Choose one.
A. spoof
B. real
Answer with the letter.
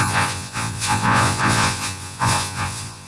A